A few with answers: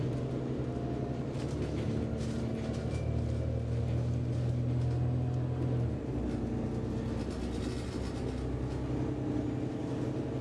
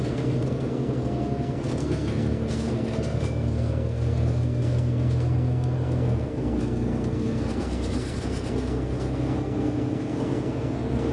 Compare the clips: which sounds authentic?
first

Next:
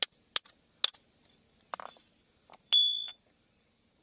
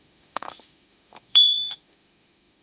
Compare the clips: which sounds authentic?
first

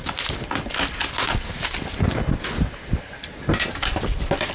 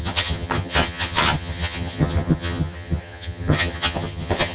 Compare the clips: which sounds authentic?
first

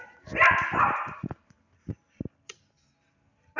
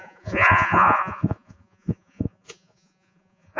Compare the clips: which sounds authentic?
first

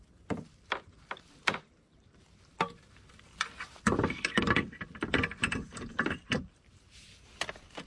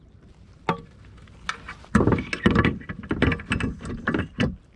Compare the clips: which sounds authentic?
second